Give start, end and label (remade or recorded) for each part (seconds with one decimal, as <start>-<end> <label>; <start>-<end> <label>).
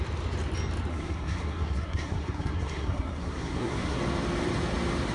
0.0-0.9 recorded; 0.9-4.0 remade; 4.0-5.1 recorded